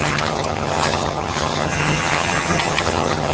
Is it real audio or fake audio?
fake